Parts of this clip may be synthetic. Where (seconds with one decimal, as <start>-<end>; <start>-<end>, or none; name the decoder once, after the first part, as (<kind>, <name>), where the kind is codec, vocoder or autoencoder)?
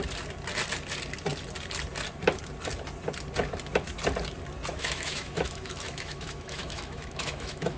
4.7-7.8 (autoencoder, DAC-VAE)